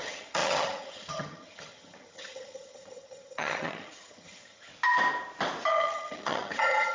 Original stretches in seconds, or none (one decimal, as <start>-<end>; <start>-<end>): 4.7-5.7